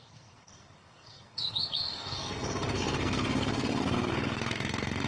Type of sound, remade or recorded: remade